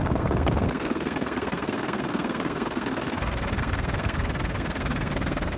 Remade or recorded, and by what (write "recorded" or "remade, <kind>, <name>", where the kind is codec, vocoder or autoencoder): remade, codec, SNAC